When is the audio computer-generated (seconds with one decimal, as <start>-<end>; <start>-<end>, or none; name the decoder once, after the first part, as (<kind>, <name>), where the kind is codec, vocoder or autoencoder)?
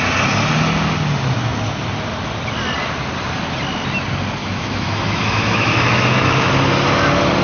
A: 4.4-6.5 (autoencoder, DAC-VAE)